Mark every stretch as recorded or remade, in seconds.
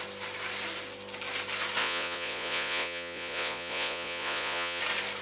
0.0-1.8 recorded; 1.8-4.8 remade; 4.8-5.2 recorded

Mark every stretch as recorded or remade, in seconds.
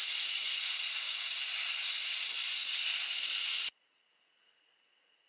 0.0-1.4 remade; 1.4-3.5 recorded; 3.5-5.3 remade